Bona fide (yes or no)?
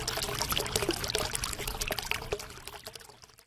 yes